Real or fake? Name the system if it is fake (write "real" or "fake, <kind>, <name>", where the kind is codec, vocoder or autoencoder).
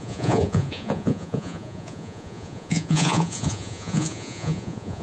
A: fake, vocoder, Vocos